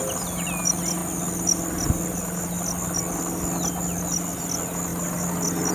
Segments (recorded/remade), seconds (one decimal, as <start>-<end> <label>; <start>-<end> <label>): 0.0-5.7 recorded

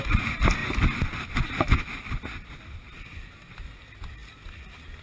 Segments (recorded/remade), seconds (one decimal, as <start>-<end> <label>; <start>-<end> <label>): 0.0-5.0 recorded

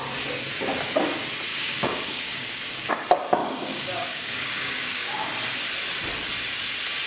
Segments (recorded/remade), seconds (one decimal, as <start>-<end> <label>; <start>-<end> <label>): 0.0-1.5 recorded; 1.5-2.9 remade; 2.9-3.4 recorded; 3.4-5.3 remade; 5.3-7.1 recorded

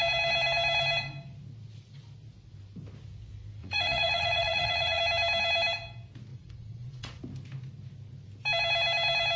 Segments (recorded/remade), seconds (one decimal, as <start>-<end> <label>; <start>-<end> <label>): 0.0-3.6 recorded; 3.6-5.0 remade; 5.0-6.3 recorded; 6.3-7.2 remade; 7.2-9.4 recorded

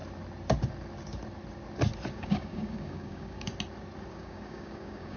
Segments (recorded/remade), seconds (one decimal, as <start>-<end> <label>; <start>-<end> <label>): 0.0-2.1 recorded; 2.1-3.5 remade; 3.5-4.1 recorded; 4.1-5.2 remade

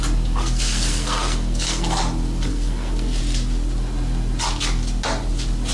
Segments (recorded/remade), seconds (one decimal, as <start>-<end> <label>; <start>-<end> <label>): 0.0-0.4 recorded; 0.4-2.0 remade; 2.0-2.5 recorded; 2.5-3.2 remade; 3.2-5.7 recorded

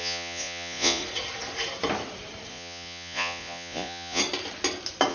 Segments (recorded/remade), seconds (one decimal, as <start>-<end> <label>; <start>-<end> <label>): 0.0-1.0 remade; 1.0-2.5 recorded; 2.5-4.2 remade; 4.2-5.1 recorded